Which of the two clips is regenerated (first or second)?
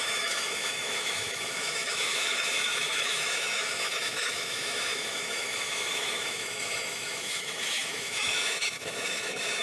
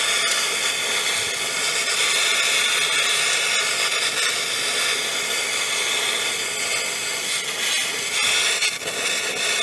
first